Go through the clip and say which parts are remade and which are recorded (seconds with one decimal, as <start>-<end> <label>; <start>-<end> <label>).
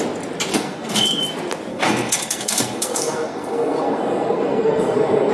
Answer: 0.0-0.5 recorded; 0.5-1.2 remade; 1.2-1.7 recorded; 1.7-5.3 remade